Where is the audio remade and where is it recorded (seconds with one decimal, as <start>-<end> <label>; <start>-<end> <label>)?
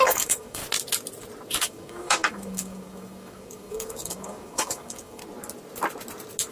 0.0-0.6 remade; 0.6-1.6 recorded; 1.6-5.2 remade; 5.2-6.5 recorded